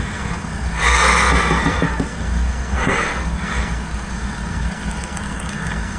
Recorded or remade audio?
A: remade